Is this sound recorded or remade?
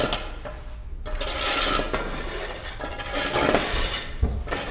recorded